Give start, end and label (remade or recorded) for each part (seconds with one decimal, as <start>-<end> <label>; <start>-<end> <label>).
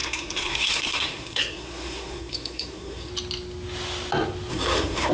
0.0-3.1 remade; 3.1-4.5 recorded; 4.5-5.1 remade